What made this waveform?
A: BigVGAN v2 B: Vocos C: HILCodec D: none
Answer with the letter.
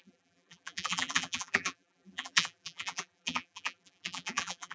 A